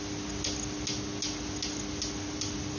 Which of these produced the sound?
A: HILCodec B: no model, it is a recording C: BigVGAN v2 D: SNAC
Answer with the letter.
B